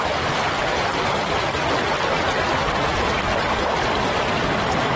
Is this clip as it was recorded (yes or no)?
yes